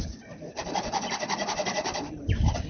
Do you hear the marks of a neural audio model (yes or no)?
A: no